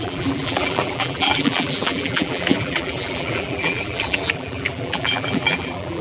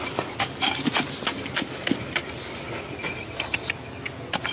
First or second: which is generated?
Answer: first